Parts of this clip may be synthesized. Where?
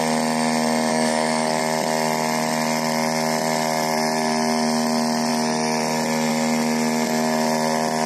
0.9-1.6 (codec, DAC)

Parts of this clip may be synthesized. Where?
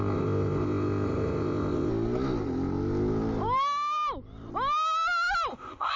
0.0-1.9 (codec, ZipCodec); 5.5-6.0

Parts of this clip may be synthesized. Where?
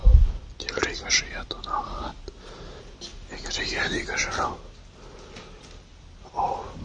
none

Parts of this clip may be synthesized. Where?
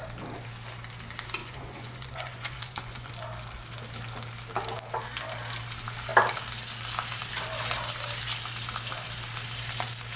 1.4-3.1 (vocoder, Vocos)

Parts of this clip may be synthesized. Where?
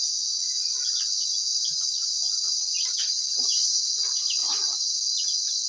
none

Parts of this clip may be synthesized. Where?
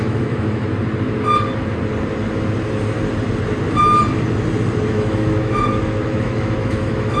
0.0-0.7 (autoencoder, DAC-VAE); 4.9-7.2